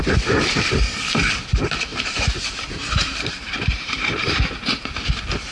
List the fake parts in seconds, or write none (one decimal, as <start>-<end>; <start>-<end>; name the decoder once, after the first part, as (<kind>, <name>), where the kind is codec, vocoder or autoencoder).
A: 1.9-5.1 (vocoder, BigVGAN v2)

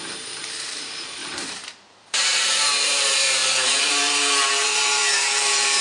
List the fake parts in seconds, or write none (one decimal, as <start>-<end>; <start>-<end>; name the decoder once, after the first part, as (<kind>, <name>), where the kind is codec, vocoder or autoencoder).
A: 0.0-5.8 (vocoder, BigVGAN v2)

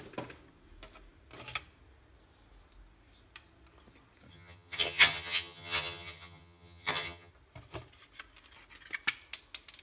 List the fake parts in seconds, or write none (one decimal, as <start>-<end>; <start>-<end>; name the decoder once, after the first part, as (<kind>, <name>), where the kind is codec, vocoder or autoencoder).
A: 4.3-7.3 (vocoder, HiFi-GAN)